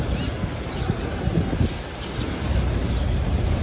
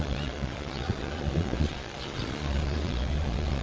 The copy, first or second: second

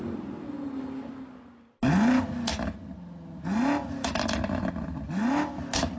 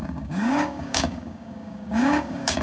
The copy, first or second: second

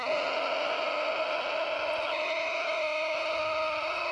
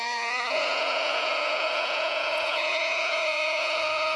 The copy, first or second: second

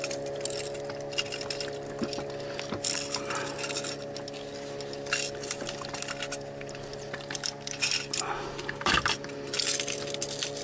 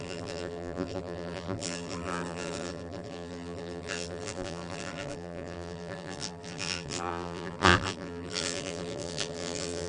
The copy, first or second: second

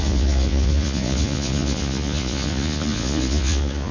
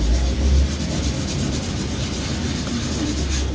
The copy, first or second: first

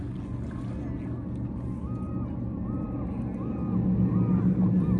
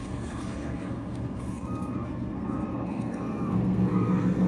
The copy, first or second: second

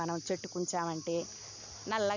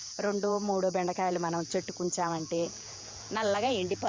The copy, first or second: second